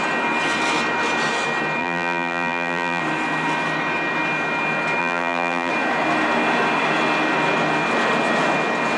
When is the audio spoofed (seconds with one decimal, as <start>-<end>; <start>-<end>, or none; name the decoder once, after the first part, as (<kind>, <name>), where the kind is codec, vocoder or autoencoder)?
1.8-3.0 (vocoder, BigVGAN v2); 5.0-5.7